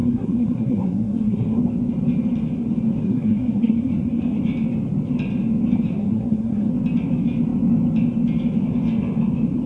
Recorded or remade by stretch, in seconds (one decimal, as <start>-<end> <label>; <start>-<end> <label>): 0.0-1.6 remade; 1.6-3.0 recorded; 3.0-4.4 remade; 4.4-5.9 recorded; 5.9-6.7 remade; 6.7-9.7 recorded